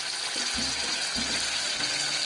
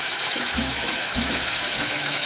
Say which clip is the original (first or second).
first